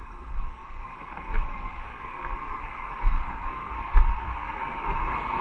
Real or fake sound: fake